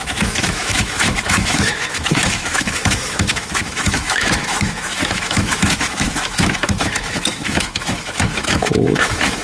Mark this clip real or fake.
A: fake